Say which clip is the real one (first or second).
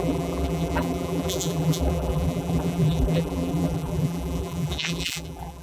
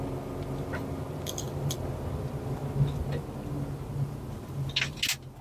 second